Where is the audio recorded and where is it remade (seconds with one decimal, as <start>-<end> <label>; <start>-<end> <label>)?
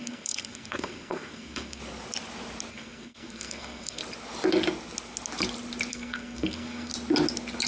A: 0.0-1.8 remade; 1.8-2.7 recorded; 2.7-4.0 remade; 4.0-5.9 recorded; 5.9-6.9 remade; 6.9-7.7 recorded